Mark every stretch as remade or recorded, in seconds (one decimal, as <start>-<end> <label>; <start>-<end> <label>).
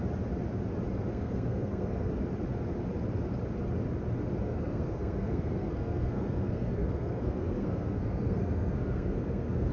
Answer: 0.0-1.1 recorded; 1.1-2.1 remade; 2.1-4.4 recorded; 4.4-9.7 remade